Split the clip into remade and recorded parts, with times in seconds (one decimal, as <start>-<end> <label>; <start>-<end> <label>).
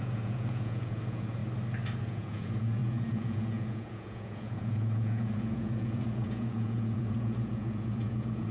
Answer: 0.0-1.4 remade; 1.4-2.0 recorded; 2.0-8.5 remade